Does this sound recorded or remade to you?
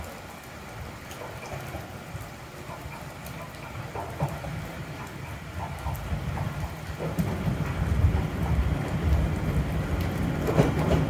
recorded